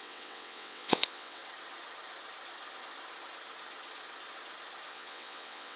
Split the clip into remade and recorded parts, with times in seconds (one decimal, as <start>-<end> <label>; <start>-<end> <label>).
0.0-1.4 remade; 1.4-4.9 recorded; 4.9-5.8 remade

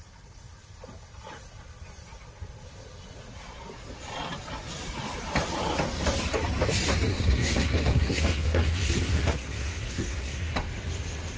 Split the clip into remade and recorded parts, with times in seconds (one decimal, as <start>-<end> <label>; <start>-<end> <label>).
0.0-7.1 recorded; 7.1-10.5 remade; 10.5-11.4 recorded

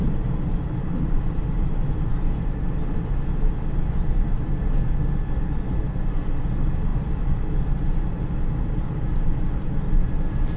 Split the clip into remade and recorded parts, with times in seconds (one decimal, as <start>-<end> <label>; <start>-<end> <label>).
0.0-10.6 recorded

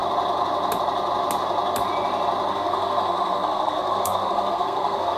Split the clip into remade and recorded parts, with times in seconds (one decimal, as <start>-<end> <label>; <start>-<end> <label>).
0.0-2.5 recorded; 2.5-5.2 remade

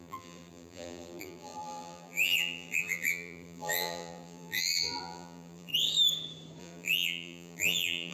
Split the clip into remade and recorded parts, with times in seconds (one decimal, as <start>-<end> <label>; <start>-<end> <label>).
0.0-5.7 remade; 5.7-6.6 recorded; 6.6-8.1 remade

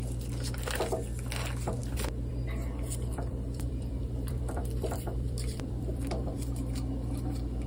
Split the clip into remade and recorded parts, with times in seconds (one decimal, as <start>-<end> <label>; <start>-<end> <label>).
0.0-3.1 recorded; 3.1-6.3 remade; 6.3-7.7 recorded

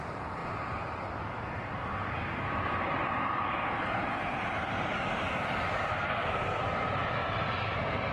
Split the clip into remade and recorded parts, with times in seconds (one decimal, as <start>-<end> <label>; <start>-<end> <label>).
0.0-5.9 recorded; 5.9-6.6 remade; 6.6-8.1 recorded

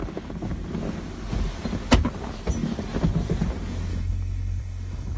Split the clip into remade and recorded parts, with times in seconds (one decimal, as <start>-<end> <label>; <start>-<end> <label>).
0.0-3.9 recorded; 3.9-5.2 remade